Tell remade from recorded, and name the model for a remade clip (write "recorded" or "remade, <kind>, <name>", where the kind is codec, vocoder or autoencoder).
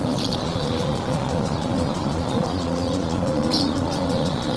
remade, vocoder, Vocos